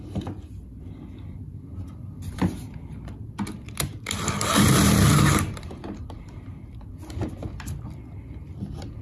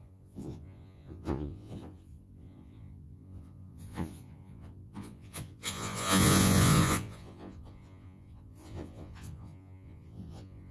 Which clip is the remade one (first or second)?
second